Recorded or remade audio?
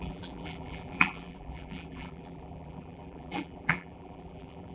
remade